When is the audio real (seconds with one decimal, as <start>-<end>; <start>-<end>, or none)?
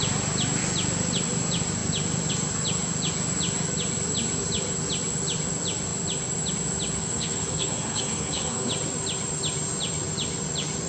0.0-7.0; 8.7-10.9